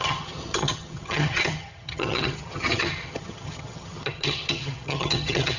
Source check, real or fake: fake